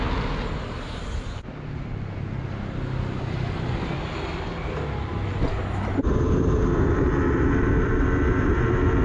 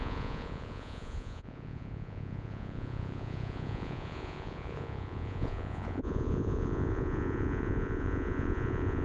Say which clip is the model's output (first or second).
second